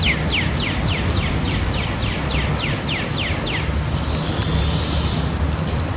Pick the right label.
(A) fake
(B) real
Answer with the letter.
B